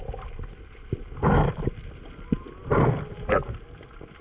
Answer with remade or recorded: recorded